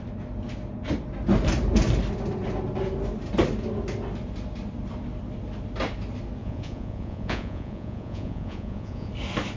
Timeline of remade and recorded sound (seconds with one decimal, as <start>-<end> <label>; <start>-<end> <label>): 0.0-6.4 recorded; 6.4-9.1 remade; 9.1-9.6 recorded